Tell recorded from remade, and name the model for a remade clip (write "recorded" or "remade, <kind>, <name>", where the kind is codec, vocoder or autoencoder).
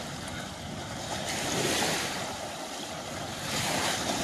remade, vocoder, BigVGAN v2